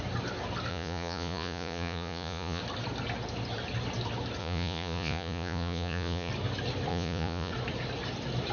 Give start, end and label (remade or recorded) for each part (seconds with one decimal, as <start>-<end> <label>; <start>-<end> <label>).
0.0-0.7 recorded; 0.7-2.6 remade; 2.6-4.4 recorded; 4.4-6.3 remade; 6.3-6.9 recorded; 6.9-7.5 remade; 7.5-8.5 recorded